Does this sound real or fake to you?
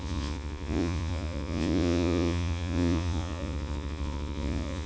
fake